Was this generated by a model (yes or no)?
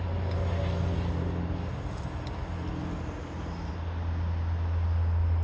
no